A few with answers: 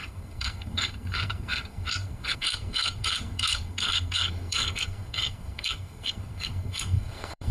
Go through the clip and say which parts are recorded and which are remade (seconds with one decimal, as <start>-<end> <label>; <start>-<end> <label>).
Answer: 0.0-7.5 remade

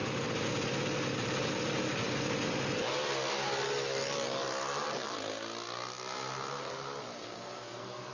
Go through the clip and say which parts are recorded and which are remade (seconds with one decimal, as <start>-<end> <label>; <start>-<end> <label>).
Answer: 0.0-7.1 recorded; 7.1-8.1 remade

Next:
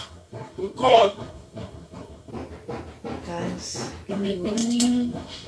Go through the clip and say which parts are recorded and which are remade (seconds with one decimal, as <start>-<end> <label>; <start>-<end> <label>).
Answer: 0.0-2.3 remade; 2.3-4.1 recorded; 4.1-5.5 remade

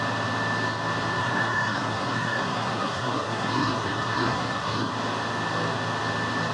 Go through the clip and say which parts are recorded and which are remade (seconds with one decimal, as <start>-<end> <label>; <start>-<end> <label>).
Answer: 0.0-1.2 recorded; 1.2-4.9 remade; 4.9-6.5 recorded